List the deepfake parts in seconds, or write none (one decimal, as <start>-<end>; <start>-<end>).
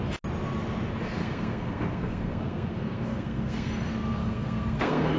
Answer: 1.2-3.7; 4.2-5.2